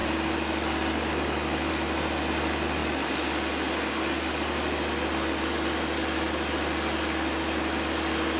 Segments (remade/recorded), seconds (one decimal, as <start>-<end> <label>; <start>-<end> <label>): 0.0-8.4 recorded